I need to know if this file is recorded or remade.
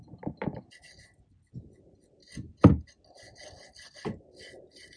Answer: recorded